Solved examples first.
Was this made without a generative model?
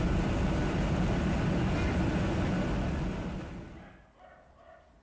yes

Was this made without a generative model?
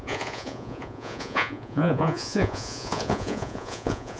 no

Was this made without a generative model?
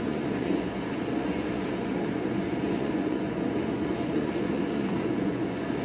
no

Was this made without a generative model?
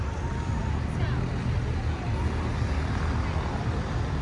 yes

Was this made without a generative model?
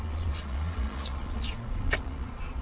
no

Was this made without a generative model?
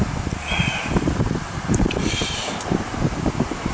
yes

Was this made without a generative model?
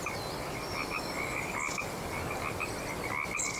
yes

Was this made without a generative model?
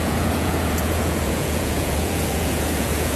no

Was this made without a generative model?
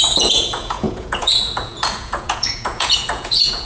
no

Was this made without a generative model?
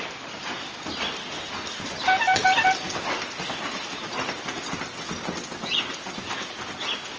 yes